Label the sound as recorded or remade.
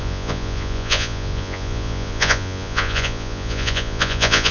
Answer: remade